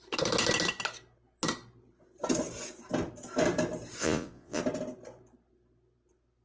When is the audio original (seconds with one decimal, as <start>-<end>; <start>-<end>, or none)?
0.0-4.0; 4.6-6.4